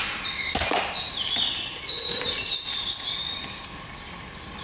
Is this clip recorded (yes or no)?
yes